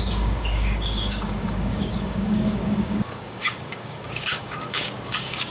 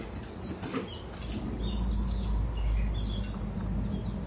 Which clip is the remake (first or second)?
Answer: first